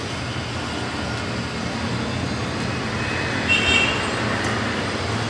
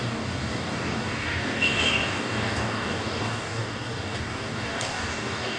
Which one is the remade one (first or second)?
second